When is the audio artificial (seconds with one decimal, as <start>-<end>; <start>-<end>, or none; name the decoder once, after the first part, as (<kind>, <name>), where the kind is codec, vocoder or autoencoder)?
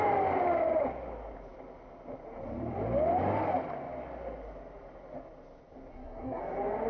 5.9-6.4 (codec, SNAC)